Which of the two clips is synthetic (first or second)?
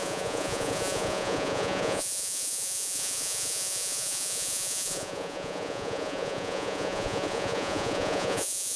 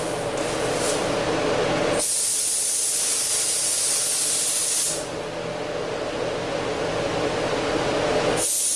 first